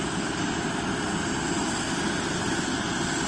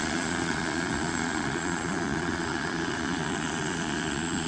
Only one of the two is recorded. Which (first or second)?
first